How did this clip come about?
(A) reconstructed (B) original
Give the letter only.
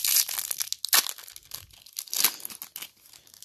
B